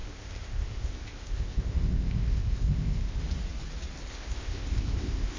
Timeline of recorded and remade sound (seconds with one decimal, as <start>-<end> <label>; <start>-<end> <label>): 0.0-3.2 remade; 3.2-4.1 recorded; 4.1-5.4 remade